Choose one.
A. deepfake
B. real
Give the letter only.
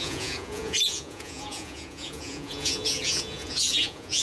A